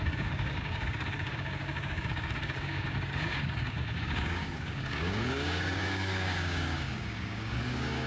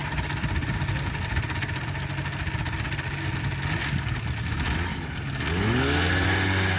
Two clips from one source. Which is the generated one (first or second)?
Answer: first